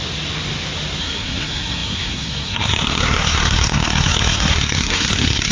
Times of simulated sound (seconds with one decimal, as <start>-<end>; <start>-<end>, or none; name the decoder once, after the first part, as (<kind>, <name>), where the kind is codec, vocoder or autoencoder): 1.0-5.5 (codec, SNAC)